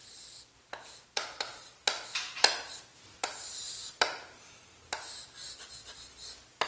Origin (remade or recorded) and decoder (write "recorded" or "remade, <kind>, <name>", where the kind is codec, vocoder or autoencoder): recorded